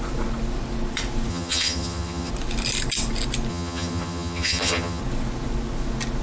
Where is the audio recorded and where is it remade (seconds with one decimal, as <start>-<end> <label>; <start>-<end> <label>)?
0.0-1.3 recorded; 1.3-2.3 remade; 2.3-3.5 recorded; 3.5-5.0 remade; 5.0-6.2 recorded